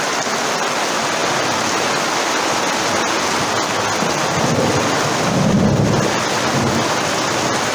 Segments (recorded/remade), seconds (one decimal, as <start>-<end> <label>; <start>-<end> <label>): 0.0-7.7 recorded